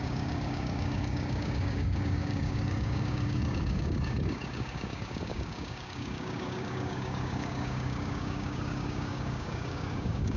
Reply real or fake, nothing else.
fake